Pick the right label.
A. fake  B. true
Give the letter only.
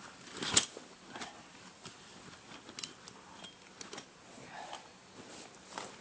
B